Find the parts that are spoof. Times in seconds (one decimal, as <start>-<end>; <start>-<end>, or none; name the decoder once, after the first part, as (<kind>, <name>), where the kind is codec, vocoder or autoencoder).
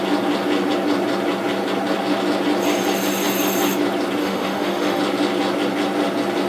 4.2-5.0 (autoencoder, DAC-VAE)